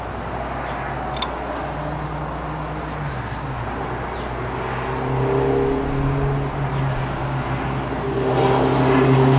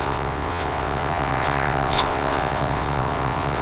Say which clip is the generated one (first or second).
second